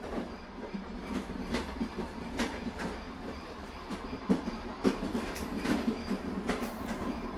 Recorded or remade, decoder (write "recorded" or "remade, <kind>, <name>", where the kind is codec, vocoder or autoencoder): remade, vocoder, BigVGAN v2